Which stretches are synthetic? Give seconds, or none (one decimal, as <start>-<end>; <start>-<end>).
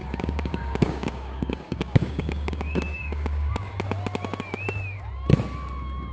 0.0-3.7